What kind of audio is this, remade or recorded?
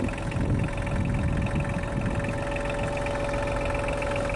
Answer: recorded